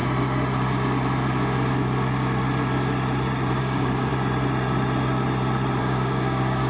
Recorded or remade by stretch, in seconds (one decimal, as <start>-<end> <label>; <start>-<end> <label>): 0.0-3.6 recorded; 3.6-4.1 remade; 4.1-5.8 recorded; 5.8-6.7 remade